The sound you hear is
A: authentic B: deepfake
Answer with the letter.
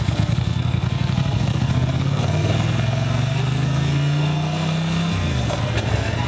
B